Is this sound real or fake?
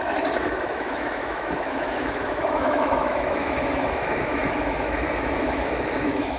fake